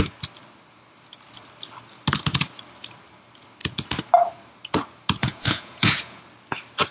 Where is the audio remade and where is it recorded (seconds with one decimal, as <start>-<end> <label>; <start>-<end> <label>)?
0.0-5.2 recorded; 5.2-6.2 remade; 6.2-6.9 recorded